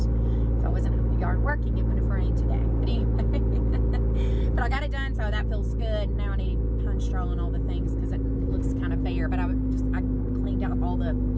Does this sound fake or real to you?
real